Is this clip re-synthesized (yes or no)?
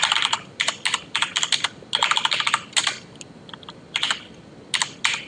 no